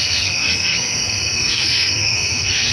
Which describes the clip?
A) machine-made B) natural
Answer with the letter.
A